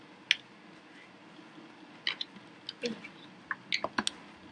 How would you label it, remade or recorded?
recorded